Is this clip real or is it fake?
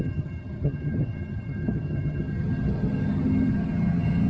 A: fake